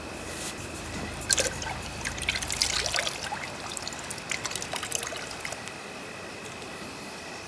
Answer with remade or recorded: recorded